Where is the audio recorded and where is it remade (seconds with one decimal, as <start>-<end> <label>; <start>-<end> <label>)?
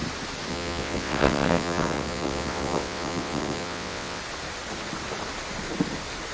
0.0-0.5 recorded; 0.5-4.2 remade; 4.2-6.3 recorded